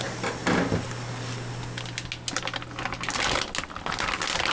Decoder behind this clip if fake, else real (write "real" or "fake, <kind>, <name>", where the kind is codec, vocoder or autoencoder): real